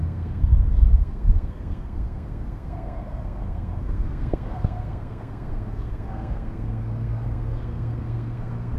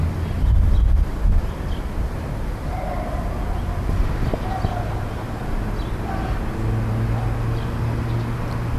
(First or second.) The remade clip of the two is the first